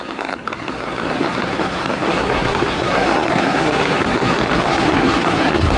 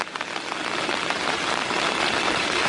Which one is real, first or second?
second